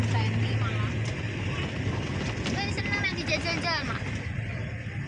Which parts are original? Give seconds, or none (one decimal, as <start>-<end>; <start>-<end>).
0.0-5.1